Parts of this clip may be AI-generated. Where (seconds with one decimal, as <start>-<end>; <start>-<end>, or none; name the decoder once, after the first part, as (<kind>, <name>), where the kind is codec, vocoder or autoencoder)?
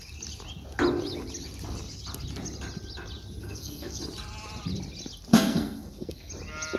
3.4-4.0 (codec, SNAC); 5.3-6.3